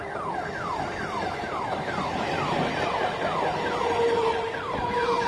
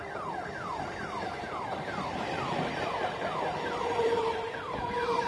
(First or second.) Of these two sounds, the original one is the first